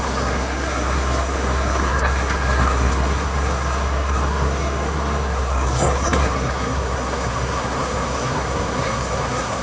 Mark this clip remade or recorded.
remade